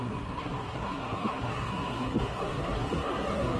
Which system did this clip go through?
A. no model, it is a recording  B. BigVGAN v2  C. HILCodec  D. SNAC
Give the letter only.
D